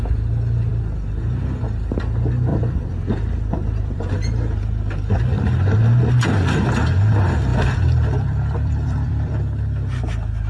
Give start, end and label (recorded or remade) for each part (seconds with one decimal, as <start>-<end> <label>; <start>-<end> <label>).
0.0-0.7 recorded; 0.7-1.6 remade; 1.6-2.5 recorded; 2.5-4.6 remade; 4.6-7.5 recorded; 7.5-9.3 remade; 9.3-10.5 recorded